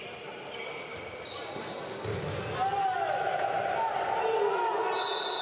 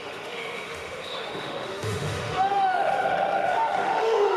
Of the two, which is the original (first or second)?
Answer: first